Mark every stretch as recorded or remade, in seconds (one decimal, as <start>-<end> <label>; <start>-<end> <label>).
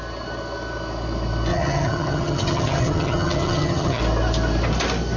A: 0.0-1.5 recorded; 1.5-4.0 remade; 4.0-5.2 recorded